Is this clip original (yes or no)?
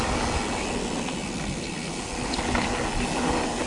yes